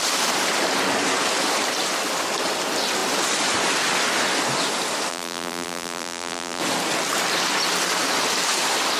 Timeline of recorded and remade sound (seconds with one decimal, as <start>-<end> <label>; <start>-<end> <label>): 0.0-5.1 recorded; 5.1-6.6 remade; 6.6-9.0 recorded